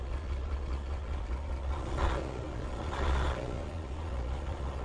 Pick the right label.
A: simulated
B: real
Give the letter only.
A